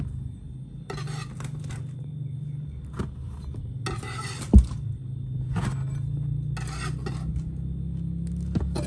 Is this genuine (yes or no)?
yes